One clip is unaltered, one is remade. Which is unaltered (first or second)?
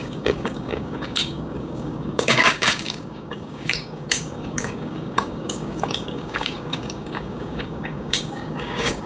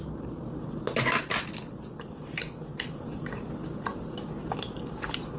second